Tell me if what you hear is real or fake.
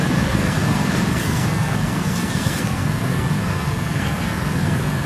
fake